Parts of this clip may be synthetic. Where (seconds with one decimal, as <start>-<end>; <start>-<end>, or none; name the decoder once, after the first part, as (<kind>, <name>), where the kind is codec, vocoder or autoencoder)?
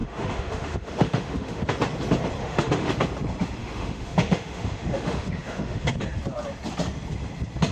0.0-1.6 (autoencoder, DAC-VAE); 2.4-2.9; 3.6-5.9